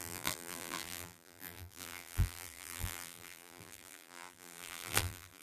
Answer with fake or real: fake